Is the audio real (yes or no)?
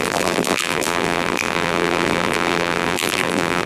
no